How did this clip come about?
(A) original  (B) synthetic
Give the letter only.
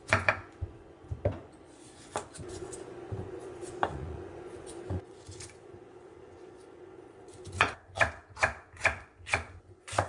B